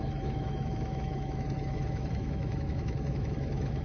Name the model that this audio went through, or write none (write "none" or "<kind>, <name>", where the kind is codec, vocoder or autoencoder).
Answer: autoencoder, DAC-VAE